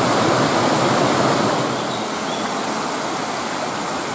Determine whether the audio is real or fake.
real